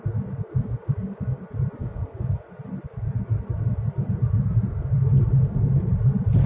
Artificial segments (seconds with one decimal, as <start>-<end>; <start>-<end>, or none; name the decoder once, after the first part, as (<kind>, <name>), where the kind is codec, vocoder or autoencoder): 0.6-1.4 (codec, DAC); 1.8-2.4